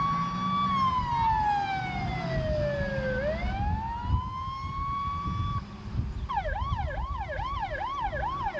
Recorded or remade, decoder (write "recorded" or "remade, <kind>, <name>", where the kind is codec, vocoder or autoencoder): recorded